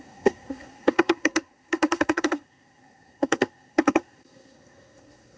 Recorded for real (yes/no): no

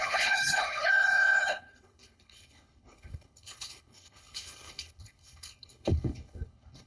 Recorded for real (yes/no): no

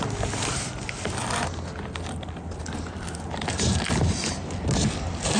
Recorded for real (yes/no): yes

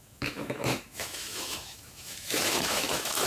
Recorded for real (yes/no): no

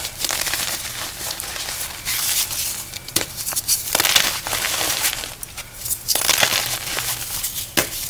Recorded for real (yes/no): yes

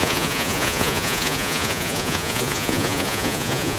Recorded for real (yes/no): no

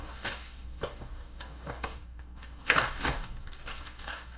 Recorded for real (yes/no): no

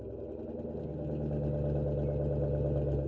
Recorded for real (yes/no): yes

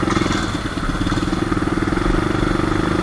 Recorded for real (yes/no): yes